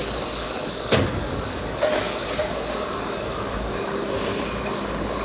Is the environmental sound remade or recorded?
remade